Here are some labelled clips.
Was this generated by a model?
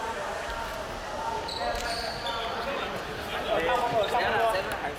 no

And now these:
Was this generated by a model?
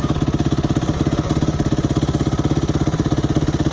no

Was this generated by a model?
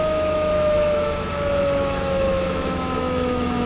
yes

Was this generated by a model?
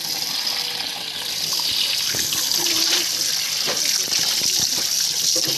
no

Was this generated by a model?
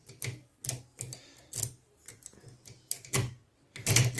no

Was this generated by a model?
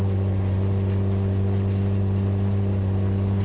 no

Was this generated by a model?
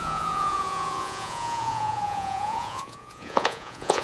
yes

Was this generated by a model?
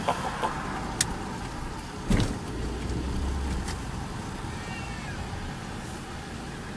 no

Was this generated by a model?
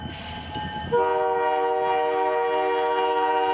no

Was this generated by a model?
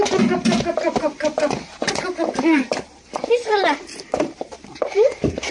yes